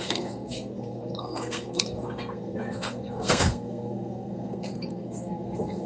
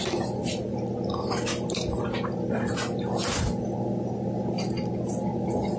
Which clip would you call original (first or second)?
second